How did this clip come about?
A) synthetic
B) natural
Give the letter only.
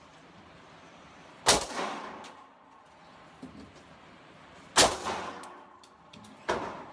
B